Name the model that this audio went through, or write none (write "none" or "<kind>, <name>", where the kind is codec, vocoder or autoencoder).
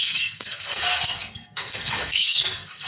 codec, SNAC